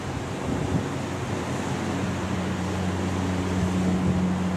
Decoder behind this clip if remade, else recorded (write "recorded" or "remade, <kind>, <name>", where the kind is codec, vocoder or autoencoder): recorded